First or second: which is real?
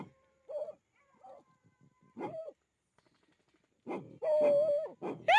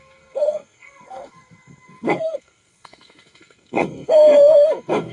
first